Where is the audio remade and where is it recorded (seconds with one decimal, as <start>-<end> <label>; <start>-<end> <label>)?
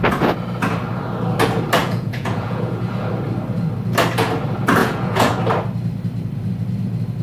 0.0-1.8 recorded; 1.8-2.8 remade; 2.8-4.8 recorded; 4.8-5.4 remade; 5.4-7.2 recorded